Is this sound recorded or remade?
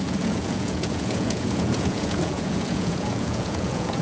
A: remade